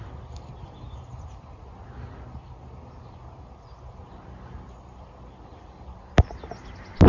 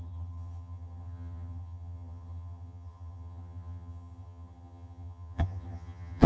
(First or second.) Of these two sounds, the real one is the first